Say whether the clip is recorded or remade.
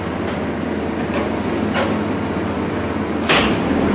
recorded